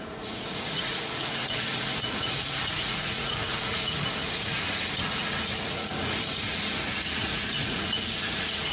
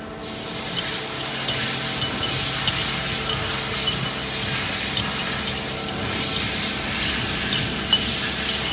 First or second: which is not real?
first